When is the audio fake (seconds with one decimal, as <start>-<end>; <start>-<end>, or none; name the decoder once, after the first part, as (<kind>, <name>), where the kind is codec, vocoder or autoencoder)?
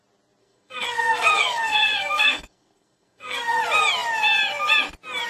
0.4-3.6 (codec, SNAC)